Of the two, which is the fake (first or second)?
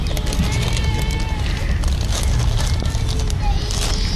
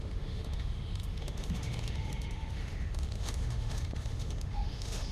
second